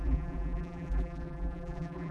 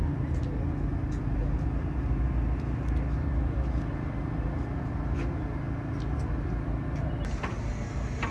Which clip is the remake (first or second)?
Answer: first